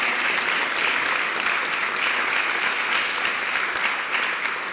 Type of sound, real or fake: real